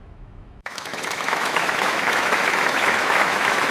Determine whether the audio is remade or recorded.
remade